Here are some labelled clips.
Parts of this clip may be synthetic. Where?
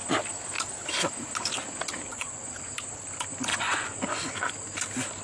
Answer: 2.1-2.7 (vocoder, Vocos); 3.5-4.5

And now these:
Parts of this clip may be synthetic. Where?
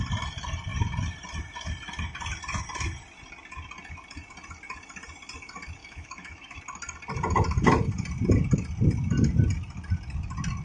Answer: 5.8-6.6 (autoencoder, DAC-VAE)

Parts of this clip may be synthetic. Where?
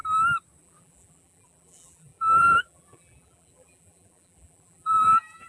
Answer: 0.6-5.5 (vocoder, BigVGAN v2)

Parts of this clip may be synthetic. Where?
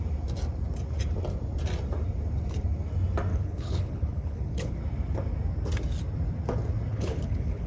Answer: 3.3-4.8 (codec, HILCodec); 6.9-7.7